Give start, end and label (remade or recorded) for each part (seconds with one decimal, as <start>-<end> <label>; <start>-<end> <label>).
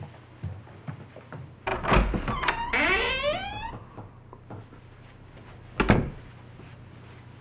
0.0-7.4 recorded